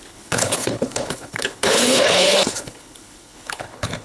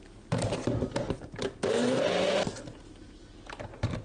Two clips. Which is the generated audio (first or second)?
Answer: first